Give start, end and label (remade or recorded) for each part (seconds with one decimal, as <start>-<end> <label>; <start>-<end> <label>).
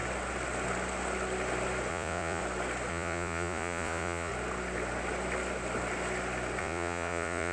0.0-1.9 recorded; 1.9-2.4 remade; 2.4-2.9 recorded; 2.9-4.3 remade; 4.3-6.6 recorded; 6.6-7.5 remade